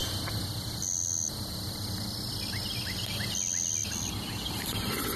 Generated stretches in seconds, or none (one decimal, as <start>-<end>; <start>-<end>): none